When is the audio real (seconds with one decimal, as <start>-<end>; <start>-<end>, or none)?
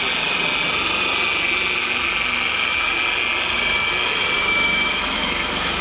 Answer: 0.0-4.4